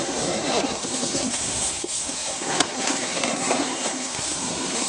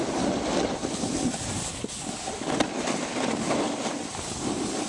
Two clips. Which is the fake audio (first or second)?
first